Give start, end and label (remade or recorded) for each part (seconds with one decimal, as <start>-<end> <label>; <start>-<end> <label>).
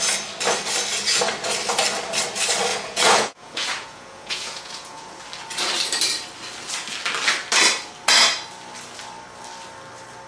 0.0-2.7 recorded; 2.7-5.2 remade; 5.2-10.3 recorded